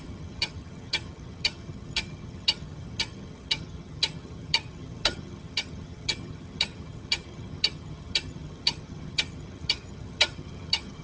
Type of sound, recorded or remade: remade